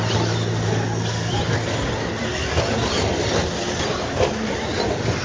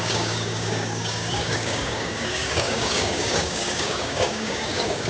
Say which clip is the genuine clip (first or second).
first